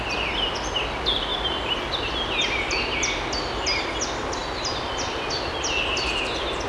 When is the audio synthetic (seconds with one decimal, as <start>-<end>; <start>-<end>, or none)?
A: none